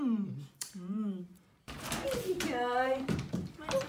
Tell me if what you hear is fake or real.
fake